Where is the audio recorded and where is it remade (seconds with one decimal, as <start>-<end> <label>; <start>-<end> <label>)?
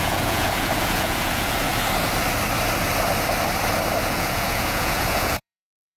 0.0-1.7 remade; 1.7-4.0 recorded; 4.0-6.0 remade